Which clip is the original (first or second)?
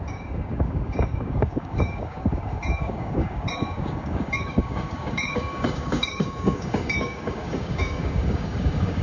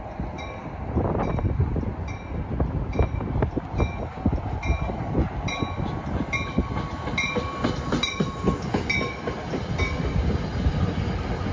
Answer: second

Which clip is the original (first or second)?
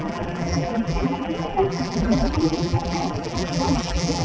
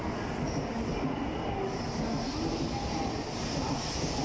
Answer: second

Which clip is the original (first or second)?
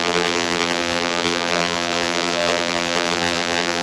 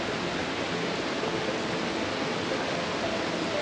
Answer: second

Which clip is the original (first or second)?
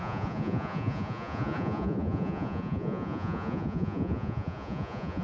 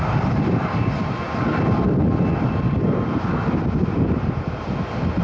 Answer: second